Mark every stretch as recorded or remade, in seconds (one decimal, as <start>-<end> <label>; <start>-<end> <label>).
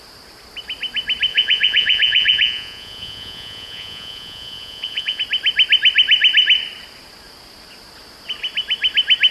0.0-1.3 recorded; 1.3-5.2 remade; 5.2-9.3 recorded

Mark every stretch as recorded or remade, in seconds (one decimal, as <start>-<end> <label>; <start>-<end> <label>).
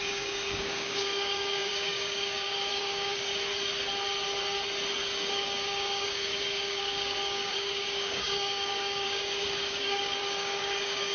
0.0-3.3 remade; 3.3-5.3 recorded; 5.3-11.1 remade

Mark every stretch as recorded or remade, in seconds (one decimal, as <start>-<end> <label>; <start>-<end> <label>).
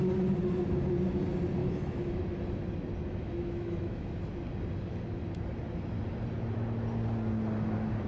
0.0-1.6 recorded; 1.6-2.2 remade; 2.2-3.0 recorded; 3.0-4.1 remade; 4.1-8.1 recorded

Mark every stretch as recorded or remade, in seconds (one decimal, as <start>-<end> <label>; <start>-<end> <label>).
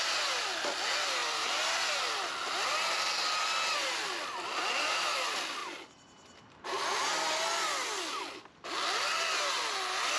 0.0-0.6 remade; 0.6-1.2 recorded; 1.2-2.3 remade; 2.3-10.2 recorded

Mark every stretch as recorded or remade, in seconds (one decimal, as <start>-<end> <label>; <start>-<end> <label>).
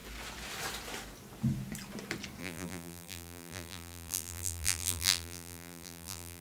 0.0-2.4 recorded; 2.4-6.4 remade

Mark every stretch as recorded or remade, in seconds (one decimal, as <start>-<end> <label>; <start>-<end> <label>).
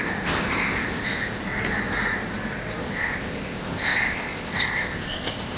0.0-1.4 remade; 1.4-2.8 recorded; 2.8-5.6 remade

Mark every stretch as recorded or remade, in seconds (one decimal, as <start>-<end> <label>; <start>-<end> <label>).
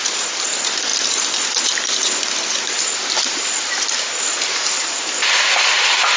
0.0-6.2 remade